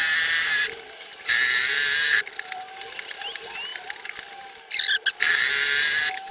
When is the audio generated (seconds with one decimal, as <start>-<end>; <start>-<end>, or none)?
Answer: 0.0-3.2